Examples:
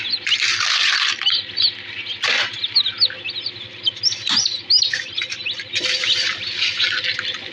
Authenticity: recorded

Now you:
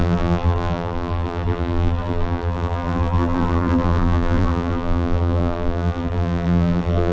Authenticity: remade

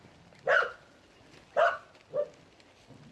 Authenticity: recorded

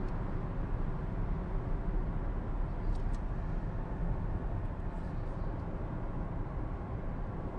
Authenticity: recorded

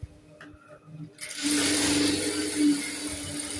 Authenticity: recorded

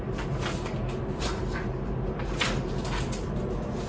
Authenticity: remade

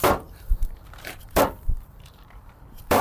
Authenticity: remade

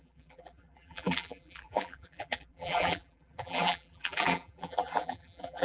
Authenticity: remade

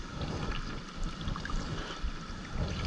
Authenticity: recorded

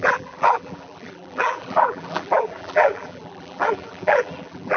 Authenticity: remade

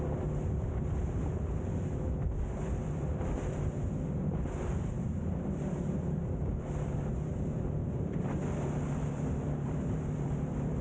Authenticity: remade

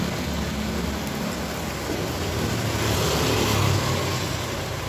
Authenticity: recorded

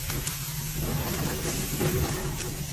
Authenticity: remade